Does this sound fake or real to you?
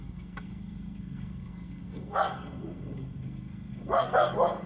fake